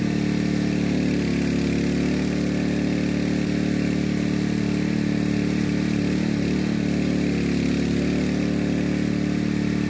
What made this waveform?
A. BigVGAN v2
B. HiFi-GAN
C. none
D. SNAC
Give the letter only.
C